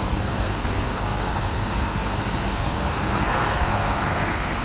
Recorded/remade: remade